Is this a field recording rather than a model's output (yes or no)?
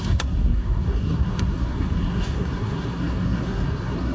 no